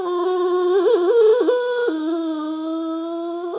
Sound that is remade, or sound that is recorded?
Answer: recorded